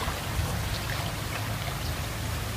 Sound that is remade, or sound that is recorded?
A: recorded